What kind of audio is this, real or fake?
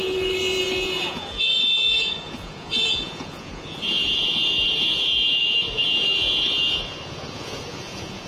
fake